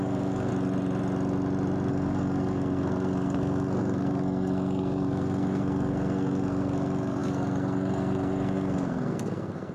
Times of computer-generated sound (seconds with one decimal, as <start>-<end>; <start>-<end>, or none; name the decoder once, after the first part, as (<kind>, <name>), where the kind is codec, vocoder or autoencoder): 0.0-0.5 (codec, SNAC); 1.9-9.7